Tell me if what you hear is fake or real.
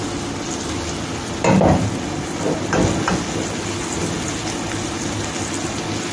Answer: real